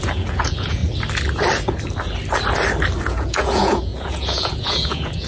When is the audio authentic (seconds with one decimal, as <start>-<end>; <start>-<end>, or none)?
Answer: 0.8-3.0